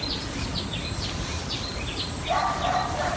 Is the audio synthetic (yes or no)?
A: no